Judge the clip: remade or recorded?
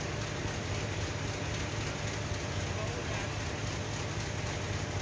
recorded